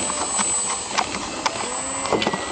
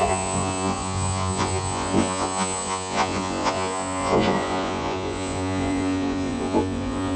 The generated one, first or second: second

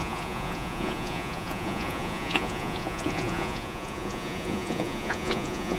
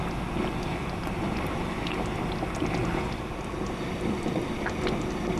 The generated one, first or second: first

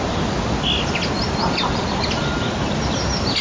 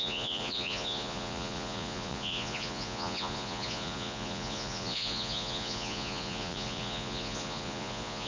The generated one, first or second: second